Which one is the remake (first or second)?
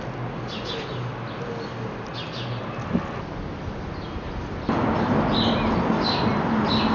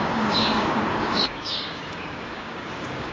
second